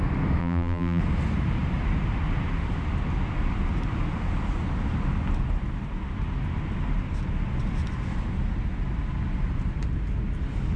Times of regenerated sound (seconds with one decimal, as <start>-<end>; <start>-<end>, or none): 0.4-1.0